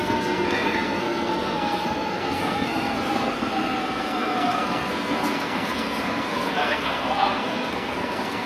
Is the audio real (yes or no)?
no